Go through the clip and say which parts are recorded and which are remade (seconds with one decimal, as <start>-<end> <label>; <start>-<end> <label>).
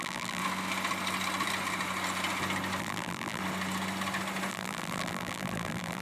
0.0-0.4 remade; 0.4-2.8 recorded; 2.8-3.4 remade; 3.4-4.5 recorded; 4.5-6.0 remade